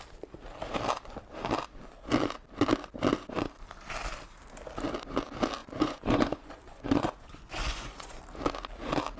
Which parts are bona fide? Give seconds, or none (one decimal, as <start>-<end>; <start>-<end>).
0.0-5.6; 8.2-9.2